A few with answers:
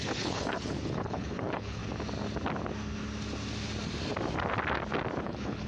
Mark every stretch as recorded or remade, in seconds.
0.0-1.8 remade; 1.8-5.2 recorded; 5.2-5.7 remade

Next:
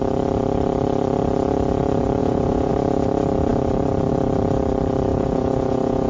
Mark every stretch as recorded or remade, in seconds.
0.0-2.2 recorded; 2.2-2.7 remade; 2.7-5.1 recorded; 5.1-6.1 remade

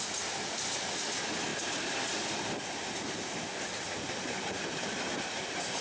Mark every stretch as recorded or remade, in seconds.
0.0-5.8 recorded

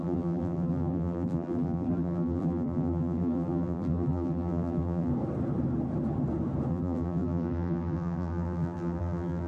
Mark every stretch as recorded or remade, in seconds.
0.0-5.1 remade; 5.1-6.7 recorded; 6.7-9.5 remade

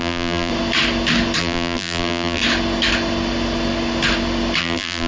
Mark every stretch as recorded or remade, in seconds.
0.0-0.5 remade; 0.5-1.4 recorded; 1.4-2.4 remade; 2.4-4.6 recorded; 4.6-5.1 remade

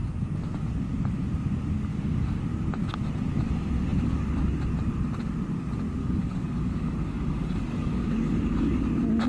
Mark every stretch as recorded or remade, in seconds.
0.0-1.9 recorded; 1.9-2.4 remade; 2.4-6.0 recorded; 6.0-8.8 remade; 8.8-9.3 recorded

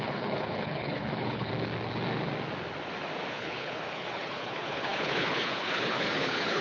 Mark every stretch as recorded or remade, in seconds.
0.0-1.5 remade; 1.5-3.3 recorded; 3.3-6.6 remade